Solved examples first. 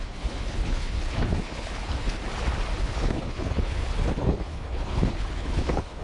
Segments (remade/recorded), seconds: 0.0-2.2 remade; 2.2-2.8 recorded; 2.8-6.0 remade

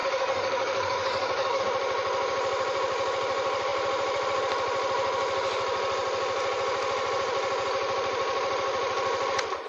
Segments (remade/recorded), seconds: 0.0-1.6 remade; 1.6-9.7 recorded

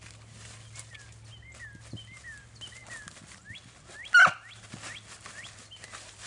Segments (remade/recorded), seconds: 0.0-6.3 recorded

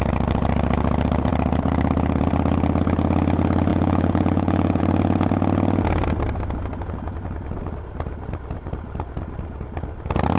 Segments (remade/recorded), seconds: 0.0-3.7 recorded; 3.7-4.8 remade; 4.8-10.4 recorded

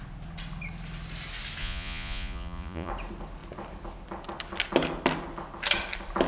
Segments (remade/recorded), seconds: 0.0-1.6 recorded; 1.6-2.9 remade; 2.9-6.3 recorded

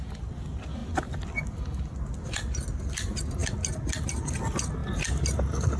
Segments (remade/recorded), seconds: 0.0-5.8 recorded

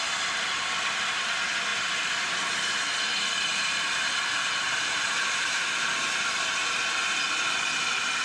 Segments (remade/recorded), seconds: 0.0-3.5 recorded; 3.5-6.5 remade; 6.5-8.2 recorded